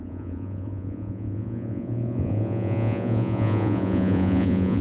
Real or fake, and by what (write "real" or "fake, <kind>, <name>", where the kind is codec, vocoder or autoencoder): fake, vocoder, Vocos